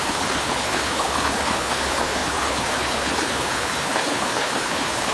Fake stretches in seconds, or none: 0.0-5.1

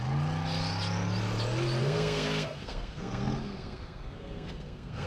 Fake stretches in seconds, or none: 1.8-5.1

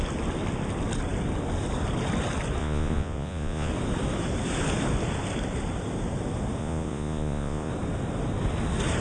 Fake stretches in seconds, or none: 2.6-3.7; 6.6-7.7

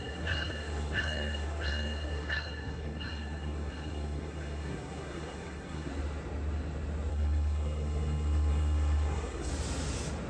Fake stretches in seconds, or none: 0.0-5.9; 7.1-9.5

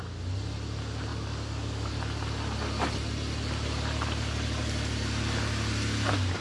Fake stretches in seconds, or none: 1.1-1.9

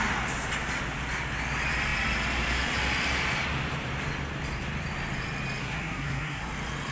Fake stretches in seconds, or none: 5.6-6.4